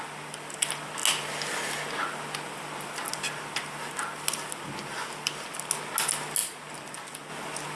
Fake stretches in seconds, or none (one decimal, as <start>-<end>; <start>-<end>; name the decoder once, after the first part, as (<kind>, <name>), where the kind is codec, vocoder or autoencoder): none